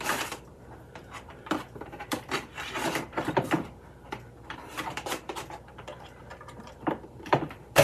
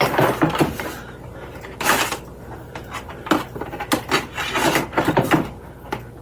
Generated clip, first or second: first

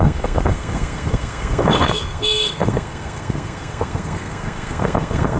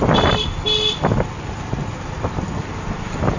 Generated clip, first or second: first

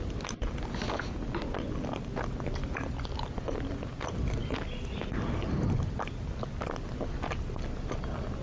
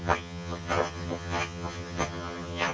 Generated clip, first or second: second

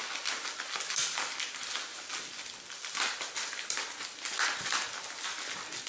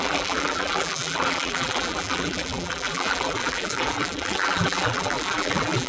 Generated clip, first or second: second